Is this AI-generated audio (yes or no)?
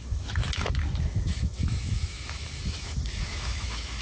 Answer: yes